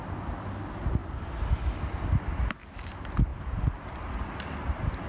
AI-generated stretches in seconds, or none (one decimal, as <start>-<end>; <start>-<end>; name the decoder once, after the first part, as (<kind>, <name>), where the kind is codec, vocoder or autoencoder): none